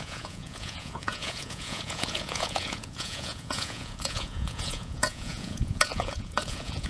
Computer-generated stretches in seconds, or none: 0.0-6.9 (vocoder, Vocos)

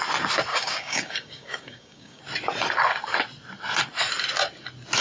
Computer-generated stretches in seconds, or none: 0.5-2.2 (codec, DAC)